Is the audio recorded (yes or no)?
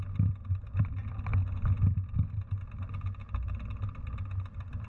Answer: yes